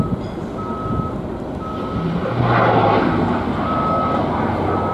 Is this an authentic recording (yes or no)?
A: yes